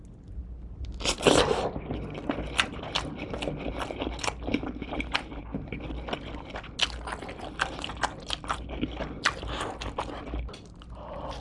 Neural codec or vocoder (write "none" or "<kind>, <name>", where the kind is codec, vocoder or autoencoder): none